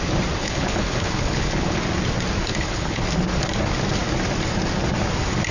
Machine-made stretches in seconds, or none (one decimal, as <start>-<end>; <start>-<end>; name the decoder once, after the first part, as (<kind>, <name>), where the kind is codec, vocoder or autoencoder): 0.4-1.8 (codec, HILCodec); 2.5-3.0